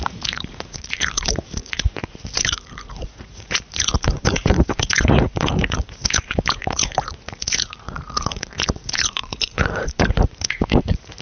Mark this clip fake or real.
fake